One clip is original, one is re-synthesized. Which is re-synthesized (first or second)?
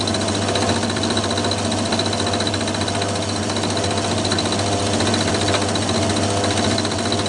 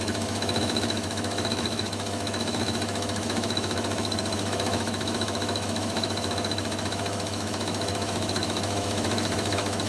second